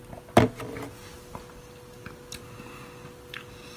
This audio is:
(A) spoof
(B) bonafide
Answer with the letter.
B